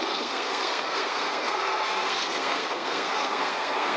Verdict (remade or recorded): remade